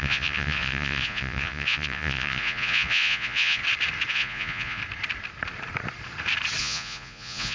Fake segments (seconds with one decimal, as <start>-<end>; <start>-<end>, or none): 0.0-3.6; 4.1-4.8; 6.6-7.5